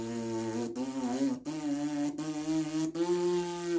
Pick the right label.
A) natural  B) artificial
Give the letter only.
A